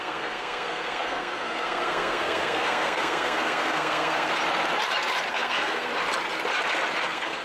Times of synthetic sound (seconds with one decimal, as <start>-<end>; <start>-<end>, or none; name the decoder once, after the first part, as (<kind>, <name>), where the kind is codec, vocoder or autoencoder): 0.0-4.3 (codec, SNAC); 5.3-5.9; 7.0-7.4